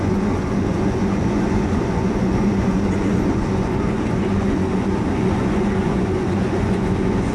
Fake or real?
fake